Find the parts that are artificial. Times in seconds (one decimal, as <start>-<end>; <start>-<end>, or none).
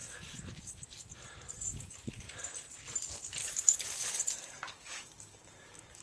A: 0.0-1.2; 1.7-2.3; 3.4-6.0